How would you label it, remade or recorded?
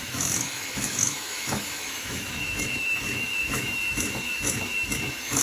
remade